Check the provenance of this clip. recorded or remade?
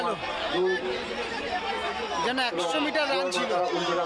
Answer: recorded